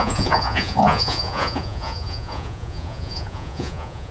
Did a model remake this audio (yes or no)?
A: yes